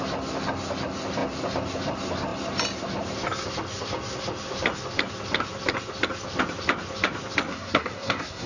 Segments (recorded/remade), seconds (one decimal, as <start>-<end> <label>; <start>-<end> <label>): 0.0-7.5 recorded; 7.5-8.5 remade

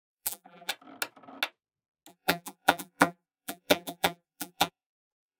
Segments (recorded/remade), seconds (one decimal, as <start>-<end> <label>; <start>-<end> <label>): 0.0-0.7 remade; 0.7-2.1 recorded; 2.1-5.4 remade

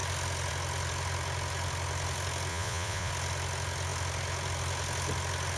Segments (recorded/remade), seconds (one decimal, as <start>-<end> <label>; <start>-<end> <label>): 0.0-2.5 recorded; 2.5-3.1 remade; 3.1-5.6 recorded

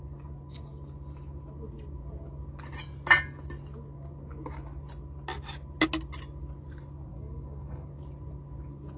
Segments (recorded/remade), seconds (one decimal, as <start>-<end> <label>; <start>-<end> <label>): 0.0-7.1 recorded; 7.1-7.9 remade; 7.9-9.0 recorded